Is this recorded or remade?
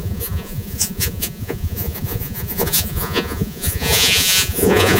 remade